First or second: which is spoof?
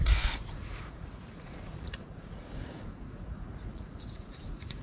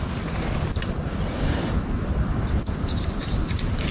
first